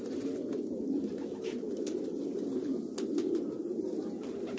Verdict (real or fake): real